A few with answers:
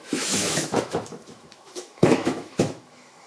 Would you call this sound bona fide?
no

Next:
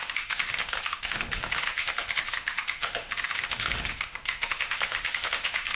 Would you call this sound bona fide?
no